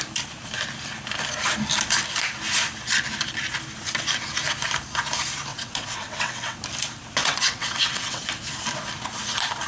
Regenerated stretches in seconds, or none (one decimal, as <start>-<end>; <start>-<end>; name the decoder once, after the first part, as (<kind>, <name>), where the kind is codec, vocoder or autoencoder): 5.5-6.6 (vocoder, WaveNeXt); 7.2-8.2